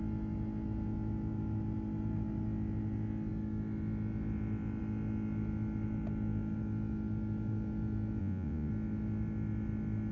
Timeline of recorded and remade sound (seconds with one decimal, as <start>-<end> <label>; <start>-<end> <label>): 0.0-8.2 recorded; 8.2-8.7 remade; 8.7-10.1 recorded